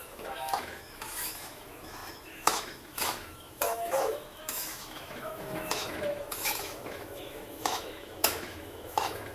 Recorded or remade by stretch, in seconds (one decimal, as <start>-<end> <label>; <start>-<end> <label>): 0.0-9.3 remade